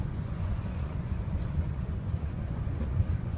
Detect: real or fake fake